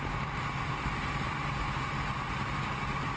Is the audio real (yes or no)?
no